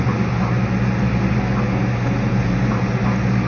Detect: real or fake real